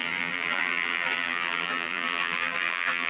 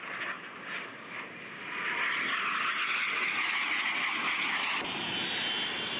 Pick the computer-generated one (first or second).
first